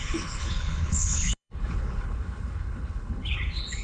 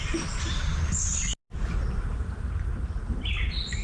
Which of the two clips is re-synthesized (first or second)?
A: first